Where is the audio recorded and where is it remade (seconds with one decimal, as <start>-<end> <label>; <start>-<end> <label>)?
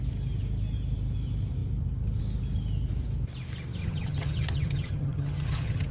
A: 0.0-3.8 recorded; 3.8-5.9 remade